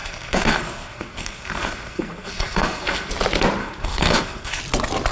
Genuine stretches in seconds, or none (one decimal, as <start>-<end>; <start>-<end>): 3.1-3.6; 4.6-5.1